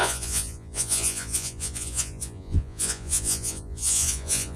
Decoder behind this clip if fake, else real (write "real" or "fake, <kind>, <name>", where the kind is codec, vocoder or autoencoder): fake, vocoder, Vocos